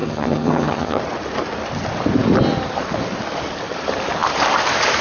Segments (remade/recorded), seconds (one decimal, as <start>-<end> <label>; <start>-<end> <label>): 0.0-1.0 remade; 1.0-5.0 recorded